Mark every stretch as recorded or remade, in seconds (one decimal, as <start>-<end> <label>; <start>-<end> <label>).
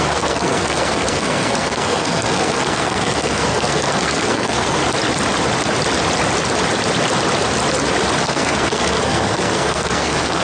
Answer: 0.0-4.8 remade; 4.8-8.2 recorded; 8.2-10.4 remade